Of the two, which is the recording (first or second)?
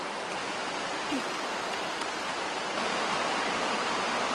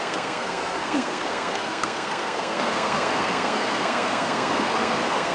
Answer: first